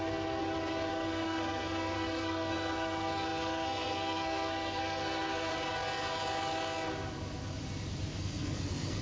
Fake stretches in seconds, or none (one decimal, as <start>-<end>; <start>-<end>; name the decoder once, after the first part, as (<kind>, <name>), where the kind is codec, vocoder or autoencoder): 0.0-0.4 (codec, SNAC); 0.9-5.5; 8.2-9.0